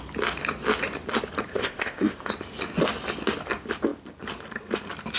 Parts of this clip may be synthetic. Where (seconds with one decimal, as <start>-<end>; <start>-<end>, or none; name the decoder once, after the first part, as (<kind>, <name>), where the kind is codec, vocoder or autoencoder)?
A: 1.5-2.3 (codec, ZipCodec)